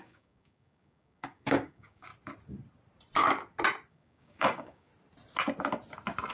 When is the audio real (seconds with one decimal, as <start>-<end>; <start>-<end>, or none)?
2.1-3.9; 4.9-6.3